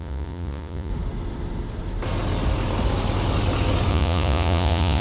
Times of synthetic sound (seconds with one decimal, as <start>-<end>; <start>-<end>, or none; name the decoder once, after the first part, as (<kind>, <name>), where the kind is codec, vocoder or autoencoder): 0.0-0.9 (vocoder, Vocos); 3.9-5.0